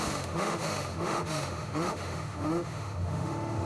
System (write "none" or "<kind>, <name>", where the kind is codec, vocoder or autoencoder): autoencoder, DAC-VAE